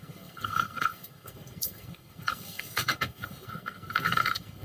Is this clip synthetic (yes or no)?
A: yes